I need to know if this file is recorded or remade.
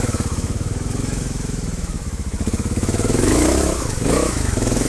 remade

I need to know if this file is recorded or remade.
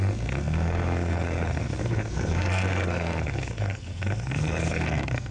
remade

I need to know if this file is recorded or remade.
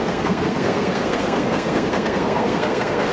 remade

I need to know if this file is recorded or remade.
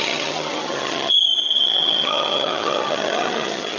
remade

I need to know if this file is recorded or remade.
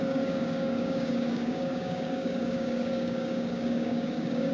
remade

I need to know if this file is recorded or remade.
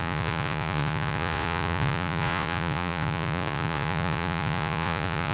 remade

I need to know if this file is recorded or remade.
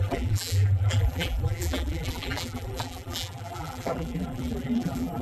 remade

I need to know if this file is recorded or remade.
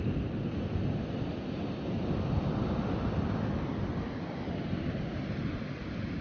recorded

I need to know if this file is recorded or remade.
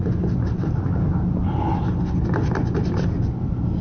recorded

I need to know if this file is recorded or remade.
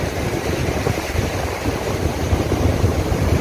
remade